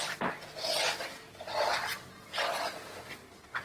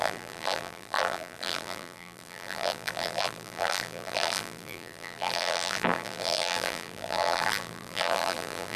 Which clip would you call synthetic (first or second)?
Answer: second